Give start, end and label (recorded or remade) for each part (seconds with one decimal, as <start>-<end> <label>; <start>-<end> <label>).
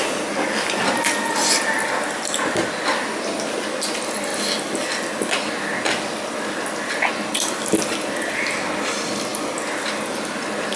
0.0-10.8 recorded